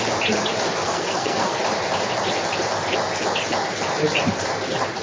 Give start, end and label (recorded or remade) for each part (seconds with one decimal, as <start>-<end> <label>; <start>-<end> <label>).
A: 0.0-0.8 recorded; 0.8-1.6 remade; 1.6-5.0 recorded